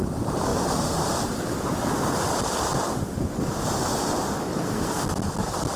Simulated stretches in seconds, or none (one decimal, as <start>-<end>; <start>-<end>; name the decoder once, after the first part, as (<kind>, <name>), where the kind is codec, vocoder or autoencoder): 4.5-5.0 (codec, SNAC)